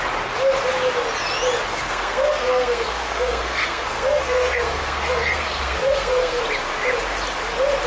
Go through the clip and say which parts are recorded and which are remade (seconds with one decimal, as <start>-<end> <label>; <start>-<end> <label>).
0.0-1.7 recorded; 1.7-6.4 remade; 6.4-7.9 recorded